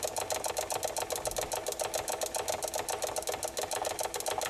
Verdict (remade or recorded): recorded